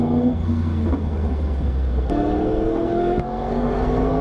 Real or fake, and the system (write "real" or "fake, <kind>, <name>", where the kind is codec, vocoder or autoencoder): fake, codec, SNAC